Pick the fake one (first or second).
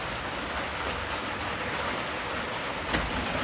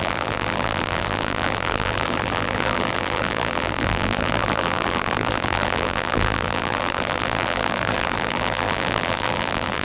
second